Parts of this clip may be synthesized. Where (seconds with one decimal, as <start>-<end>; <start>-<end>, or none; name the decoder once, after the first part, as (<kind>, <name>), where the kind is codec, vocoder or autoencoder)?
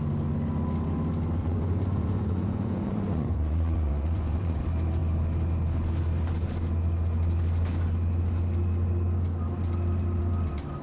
1.4-4.6 (vocoder, Vocos)